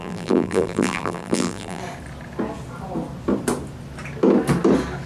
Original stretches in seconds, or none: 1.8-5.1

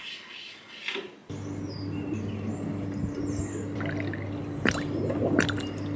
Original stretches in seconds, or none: 0.0-6.0

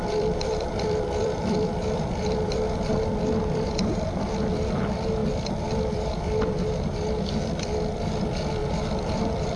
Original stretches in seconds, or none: 4.2-8.6

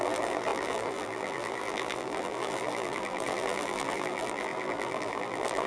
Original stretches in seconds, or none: none

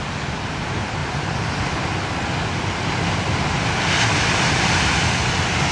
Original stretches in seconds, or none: 0.0-5.7

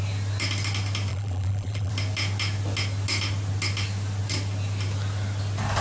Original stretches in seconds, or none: 0.0-1.1; 1.9-5.8

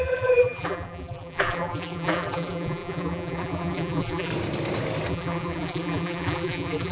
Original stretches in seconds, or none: 4.3-5.1

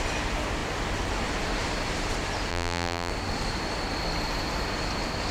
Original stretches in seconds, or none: 0.0-2.5; 3.1-5.3